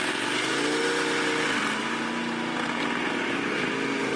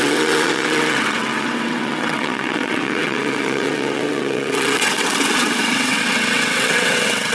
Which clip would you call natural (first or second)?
first